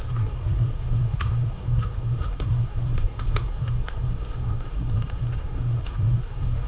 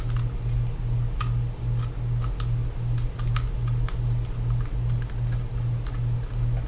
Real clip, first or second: second